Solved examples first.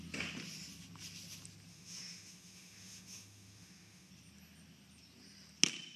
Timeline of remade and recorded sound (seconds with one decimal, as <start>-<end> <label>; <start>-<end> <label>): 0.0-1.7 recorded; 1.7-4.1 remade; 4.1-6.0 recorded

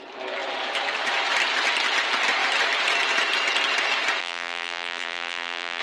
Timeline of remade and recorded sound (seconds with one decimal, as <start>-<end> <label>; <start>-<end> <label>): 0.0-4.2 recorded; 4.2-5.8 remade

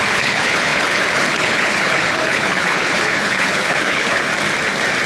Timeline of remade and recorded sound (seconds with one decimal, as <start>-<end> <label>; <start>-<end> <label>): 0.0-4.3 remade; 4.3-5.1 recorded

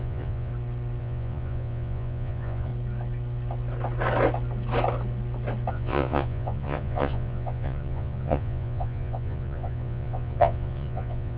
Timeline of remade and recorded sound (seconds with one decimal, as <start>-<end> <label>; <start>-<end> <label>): 0.0-0.5 remade; 0.5-1.0 recorded; 1.0-2.7 remade; 2.7-5.7 recorded; 5.7-11.4 remade

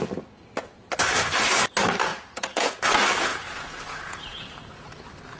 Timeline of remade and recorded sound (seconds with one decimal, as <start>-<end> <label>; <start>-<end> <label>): 0.0-2.1 recorded; 2.1-2.8 remade; 2.8-3.3 recorded; 3.3-4.4 remade; 4.4-5.4 recorded

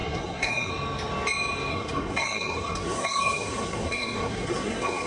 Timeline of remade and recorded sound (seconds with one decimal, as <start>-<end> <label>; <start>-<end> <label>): 0.0-0.7 remade; 0.7-1.7 recorded; 1.7-5.1 remade

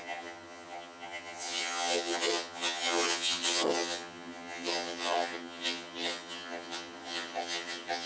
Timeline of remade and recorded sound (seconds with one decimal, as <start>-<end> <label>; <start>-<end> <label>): 0.0-8.1 remade

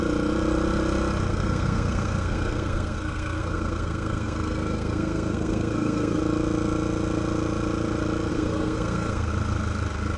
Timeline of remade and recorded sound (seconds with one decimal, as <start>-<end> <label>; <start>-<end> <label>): 0.0-1.3 recorded; 1.3-6.2 remade; 6.2-8.3 recorded; 8.3-9.3 remade; 9.3-10.2 recorded